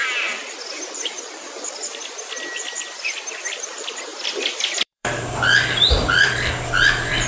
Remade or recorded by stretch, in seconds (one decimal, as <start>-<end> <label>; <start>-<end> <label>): 0.0-4.1 recorded; 4.1-6.5 remade; 6.5-7.3 recorded